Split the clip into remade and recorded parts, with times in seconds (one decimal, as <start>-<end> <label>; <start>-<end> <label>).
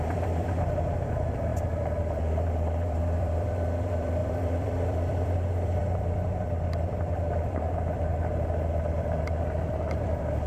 0.0-10.5 remade